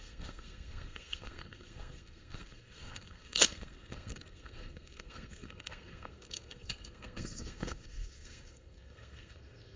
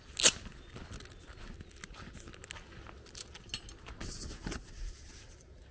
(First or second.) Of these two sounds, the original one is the second